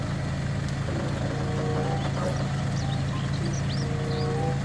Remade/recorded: recorded